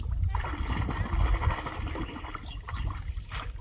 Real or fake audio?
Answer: real